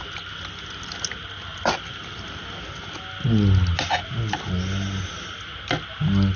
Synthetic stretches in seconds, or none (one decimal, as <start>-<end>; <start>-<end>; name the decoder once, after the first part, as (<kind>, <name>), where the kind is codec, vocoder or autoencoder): none